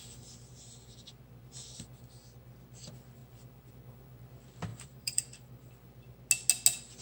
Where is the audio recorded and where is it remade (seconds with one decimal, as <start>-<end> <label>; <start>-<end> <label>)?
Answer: 0.0-4.7 recorded; 4.7-5.7 remade; 5.7-7.0 recorded